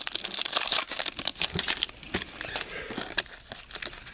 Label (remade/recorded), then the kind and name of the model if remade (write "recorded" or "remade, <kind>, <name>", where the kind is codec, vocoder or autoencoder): recorded